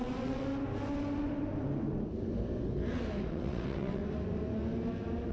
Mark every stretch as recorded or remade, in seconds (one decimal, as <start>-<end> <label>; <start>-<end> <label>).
0.0-0.5 remade; 0.5-3.3 recorded; 3.3-4.0 remade; 4.0-5.3 recorded